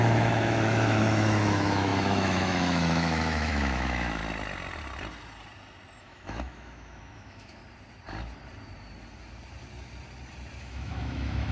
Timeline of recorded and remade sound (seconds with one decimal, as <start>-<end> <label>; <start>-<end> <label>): 0.0-4.2 remade; 4.2-6.0 recorded; 6.0-7.6 remade; 7.6-10.6 recorded; 10.6-11.5 remade